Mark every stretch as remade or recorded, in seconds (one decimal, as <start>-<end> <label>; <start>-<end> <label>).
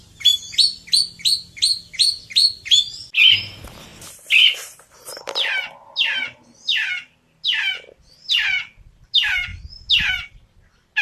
0.0-11.0 recorded